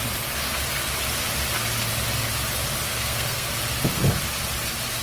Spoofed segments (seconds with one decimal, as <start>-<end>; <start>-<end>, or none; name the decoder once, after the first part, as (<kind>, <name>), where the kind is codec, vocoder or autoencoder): 2.9-3.5 (codec, SNAC)